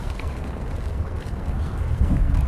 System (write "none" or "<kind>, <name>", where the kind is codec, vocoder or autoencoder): codec, SNAC